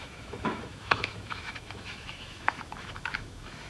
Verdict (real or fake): fake